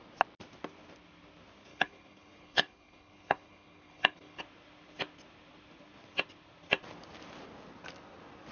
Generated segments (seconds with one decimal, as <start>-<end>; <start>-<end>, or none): 1.7-4.4